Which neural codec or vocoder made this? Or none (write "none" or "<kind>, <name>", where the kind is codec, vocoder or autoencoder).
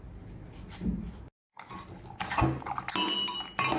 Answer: none